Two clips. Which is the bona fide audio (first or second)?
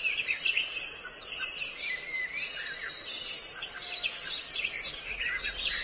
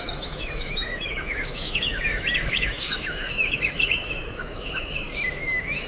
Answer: first